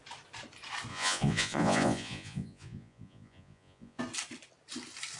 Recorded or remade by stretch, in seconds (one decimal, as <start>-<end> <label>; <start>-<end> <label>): 0.0-0.9 recorded; 0.9-4.0 remade; 4.0-5.2 recorded